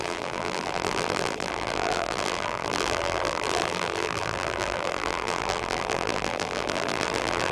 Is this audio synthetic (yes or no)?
yes